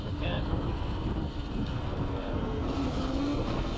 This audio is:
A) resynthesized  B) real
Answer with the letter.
A